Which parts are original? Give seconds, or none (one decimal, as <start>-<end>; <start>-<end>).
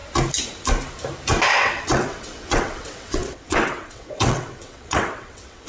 0.0-1.6